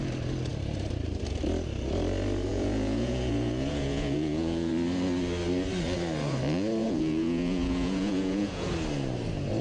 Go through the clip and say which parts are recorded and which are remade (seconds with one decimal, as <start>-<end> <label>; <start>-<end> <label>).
0.0-2.5 recorded; 2.5-4.7 remade; 4.7-6.8 recorded; 6.8-8.7 remade; 8.7-9.6 recorded